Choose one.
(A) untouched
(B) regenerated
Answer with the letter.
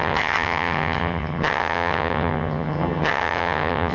B